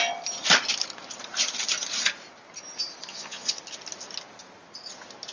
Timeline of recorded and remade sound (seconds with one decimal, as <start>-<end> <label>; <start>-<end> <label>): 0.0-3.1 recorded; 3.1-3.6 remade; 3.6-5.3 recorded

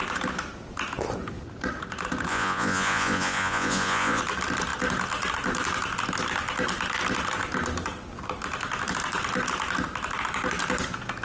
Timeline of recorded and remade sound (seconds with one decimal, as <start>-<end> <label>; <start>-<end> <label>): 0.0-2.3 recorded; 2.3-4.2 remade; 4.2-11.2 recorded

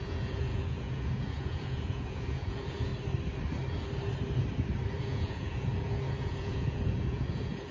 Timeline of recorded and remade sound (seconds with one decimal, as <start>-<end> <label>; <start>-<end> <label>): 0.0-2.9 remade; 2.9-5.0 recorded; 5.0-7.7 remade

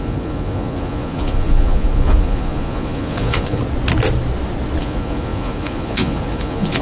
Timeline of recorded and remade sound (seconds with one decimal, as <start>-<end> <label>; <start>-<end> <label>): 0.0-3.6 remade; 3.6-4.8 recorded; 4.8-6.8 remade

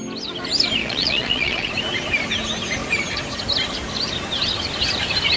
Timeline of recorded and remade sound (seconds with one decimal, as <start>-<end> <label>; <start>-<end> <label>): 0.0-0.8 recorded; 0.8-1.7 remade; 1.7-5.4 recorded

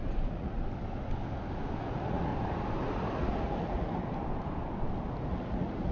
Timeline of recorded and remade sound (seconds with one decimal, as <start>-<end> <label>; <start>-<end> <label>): 0.0-0.6 remade; 0.6-1.8 recorded; 1.8-2.3 remade; 2.3-2.8 recorded; 2.8-4.0 remade; 4.0-5.3 recorded; 5.3-5.9 remade

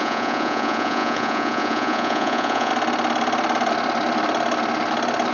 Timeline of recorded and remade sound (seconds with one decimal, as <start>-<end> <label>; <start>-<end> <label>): 0.0-2.7 remade; 2.7-5.3 recorded

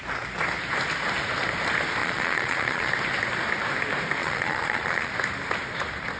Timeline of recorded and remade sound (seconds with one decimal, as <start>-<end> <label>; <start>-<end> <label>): 0.0-2.0 recorded; 2.0-2.9 remade; 2.9-4.2 recorded; 4.2-5.1 remade; 5.1-6.2 recorded